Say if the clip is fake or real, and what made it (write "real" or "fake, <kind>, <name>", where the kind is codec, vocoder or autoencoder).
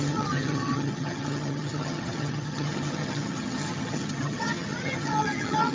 fake, vocoder, HiFi-GAN